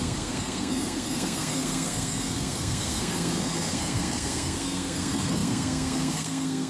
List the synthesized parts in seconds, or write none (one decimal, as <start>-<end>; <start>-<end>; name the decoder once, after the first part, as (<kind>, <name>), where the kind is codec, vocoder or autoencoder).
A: 0.0-6.7 (codec, SNAC)